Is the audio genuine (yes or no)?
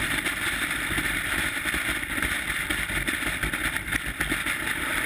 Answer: no